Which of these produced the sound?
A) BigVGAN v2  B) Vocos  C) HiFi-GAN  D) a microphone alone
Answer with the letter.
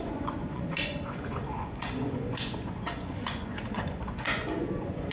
B